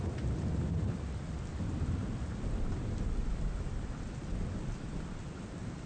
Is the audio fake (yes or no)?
no